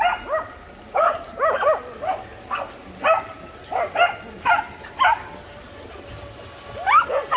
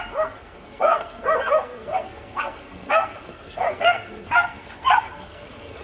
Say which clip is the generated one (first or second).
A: second